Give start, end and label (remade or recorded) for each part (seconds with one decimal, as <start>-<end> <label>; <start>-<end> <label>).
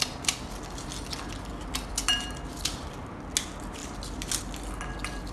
0.0-5.3 recorded